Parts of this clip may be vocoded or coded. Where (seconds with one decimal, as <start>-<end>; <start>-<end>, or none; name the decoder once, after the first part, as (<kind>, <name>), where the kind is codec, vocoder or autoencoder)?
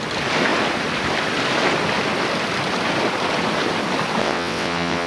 4.2-5.1 (vocoder, WaveNeXt)